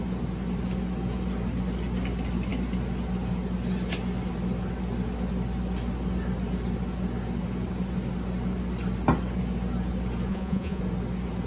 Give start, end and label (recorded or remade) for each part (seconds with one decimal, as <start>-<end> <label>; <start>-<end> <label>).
0.0-10.3 recorded; 10.3-10.8 remade; 10.8-11.5 recorded